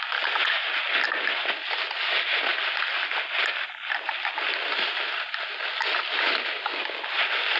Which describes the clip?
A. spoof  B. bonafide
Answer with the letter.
B